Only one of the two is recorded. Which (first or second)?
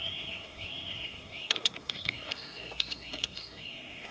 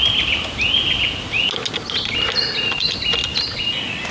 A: second